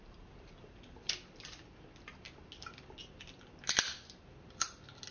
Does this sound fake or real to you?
real